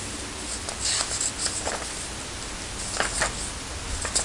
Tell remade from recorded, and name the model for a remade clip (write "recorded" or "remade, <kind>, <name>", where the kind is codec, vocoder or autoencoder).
recorded